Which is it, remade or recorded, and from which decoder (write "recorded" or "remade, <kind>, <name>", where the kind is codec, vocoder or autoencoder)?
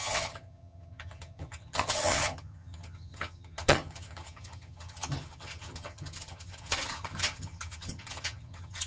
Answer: remade, vocoder, HiFi-GAN